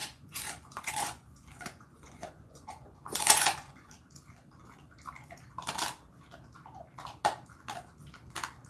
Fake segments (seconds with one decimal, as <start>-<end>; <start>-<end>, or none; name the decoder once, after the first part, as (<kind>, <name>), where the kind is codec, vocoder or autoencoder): 0.0-3.9 (vocoder, Vocos)